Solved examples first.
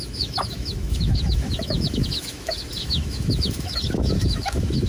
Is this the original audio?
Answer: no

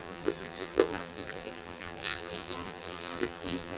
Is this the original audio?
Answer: no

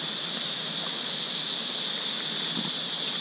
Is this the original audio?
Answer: yes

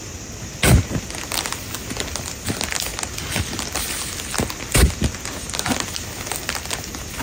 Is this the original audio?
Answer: yes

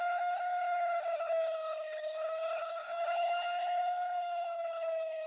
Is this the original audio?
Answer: no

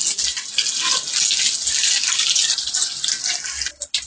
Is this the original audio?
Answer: yes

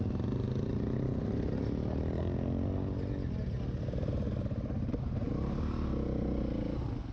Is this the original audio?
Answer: yes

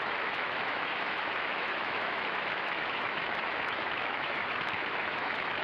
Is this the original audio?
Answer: no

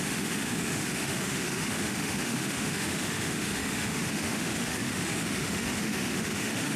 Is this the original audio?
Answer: no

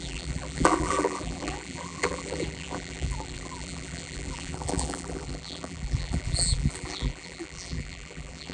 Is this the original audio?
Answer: no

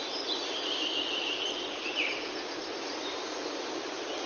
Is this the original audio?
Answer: yes